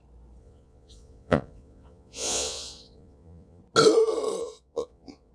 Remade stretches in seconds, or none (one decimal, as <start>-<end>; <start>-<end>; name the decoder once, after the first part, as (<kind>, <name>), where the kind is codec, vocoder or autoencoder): 0.4-3.6 (vocoder, Vocos); 4.4-5.3